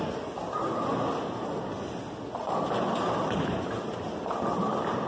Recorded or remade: recorded